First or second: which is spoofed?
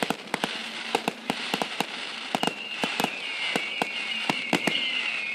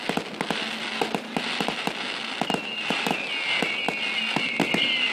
first